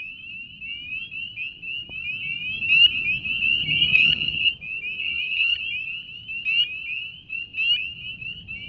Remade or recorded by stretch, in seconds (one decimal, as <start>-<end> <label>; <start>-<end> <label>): 0.0-3.6 recorded; 3.6-4.5 remade; 4.5-5.0 recorded; 5.0-5.6 remade; 5.6-8.7 recorded